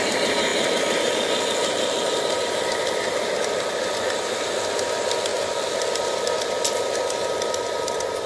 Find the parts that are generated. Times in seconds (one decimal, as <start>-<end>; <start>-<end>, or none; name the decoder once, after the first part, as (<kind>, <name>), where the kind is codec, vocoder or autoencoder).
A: none